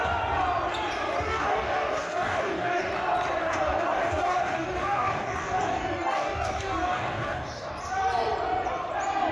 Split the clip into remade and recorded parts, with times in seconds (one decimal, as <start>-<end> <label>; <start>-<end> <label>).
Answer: 0.0-1.3 recorded; 1.3-2.9 remade; 2.9-3.4 recorded; 3.4-7.7 remade; 7.7-9.3 recorded